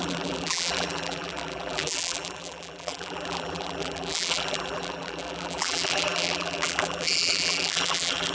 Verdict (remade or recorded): remade